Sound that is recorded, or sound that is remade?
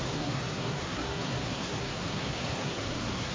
remade